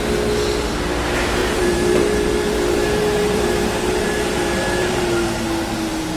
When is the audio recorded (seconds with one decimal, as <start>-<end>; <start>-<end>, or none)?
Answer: 0.0-1.4; 5.1-6.2